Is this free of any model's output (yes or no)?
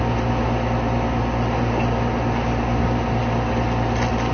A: yes